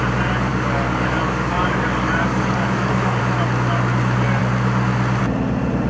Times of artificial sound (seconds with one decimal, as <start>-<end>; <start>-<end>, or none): 0.5-3.2